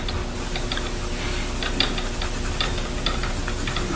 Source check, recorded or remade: recorded